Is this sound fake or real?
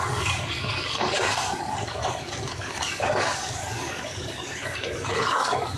fake